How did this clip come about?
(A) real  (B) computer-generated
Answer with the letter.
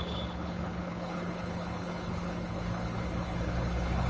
B